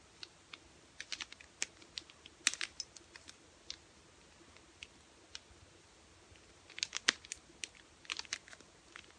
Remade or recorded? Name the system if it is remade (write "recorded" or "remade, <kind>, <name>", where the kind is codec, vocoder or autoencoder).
recorded